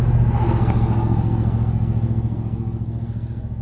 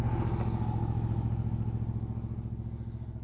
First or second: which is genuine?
second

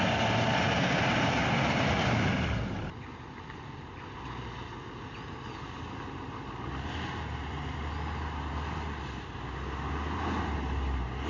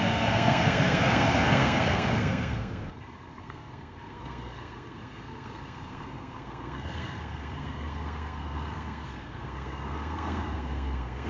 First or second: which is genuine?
first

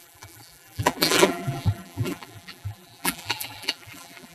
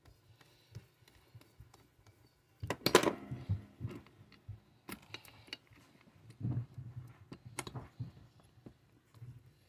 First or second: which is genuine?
second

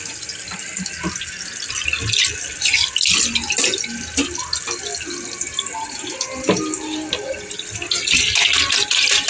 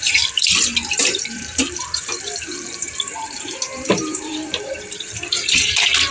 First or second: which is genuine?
first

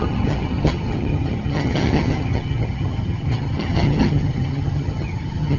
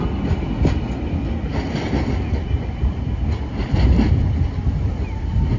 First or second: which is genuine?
second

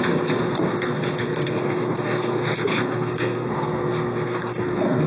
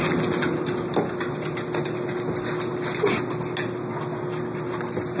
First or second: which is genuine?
second